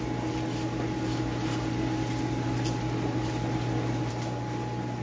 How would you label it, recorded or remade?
recorded